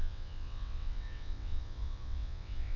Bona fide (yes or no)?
no